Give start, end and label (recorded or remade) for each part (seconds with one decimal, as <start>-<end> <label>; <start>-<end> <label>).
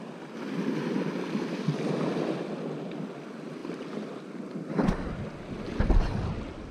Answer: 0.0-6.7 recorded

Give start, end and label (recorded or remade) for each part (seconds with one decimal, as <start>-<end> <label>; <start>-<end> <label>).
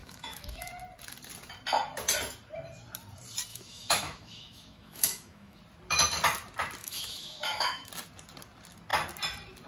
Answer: 0.0-0.7 remade; 0.7-3.5 recorded; 3.5-5.6 remade; 5.6-6.8 recorded; 6.8-7.9 remade; 7.9-9.7 recorded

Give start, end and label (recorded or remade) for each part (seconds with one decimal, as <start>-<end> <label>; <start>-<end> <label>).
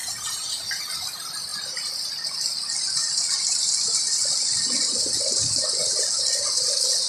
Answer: 0.0-0.7 remade; 0.7-7.1 recorded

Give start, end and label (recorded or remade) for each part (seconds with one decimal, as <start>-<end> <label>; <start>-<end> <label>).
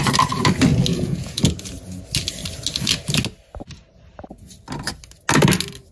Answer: 0.0-0.9 recorded; 0.9-1.4 remade; 1.4-5.9 recorded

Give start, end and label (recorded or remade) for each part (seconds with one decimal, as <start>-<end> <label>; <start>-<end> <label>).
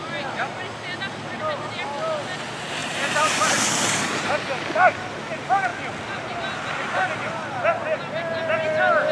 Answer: 0.0-2.8 recorded; 2.8-4.3 remade; 4.3-9.1 recorded